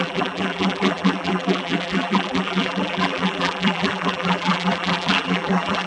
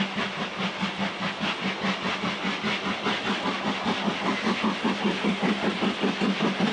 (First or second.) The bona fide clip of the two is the second